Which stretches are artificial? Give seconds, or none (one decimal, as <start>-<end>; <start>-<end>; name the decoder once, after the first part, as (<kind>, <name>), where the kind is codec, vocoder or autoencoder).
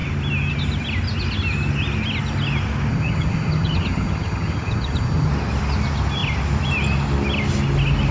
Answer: 2.9-5.3 (vocoder, HiFi-GAN)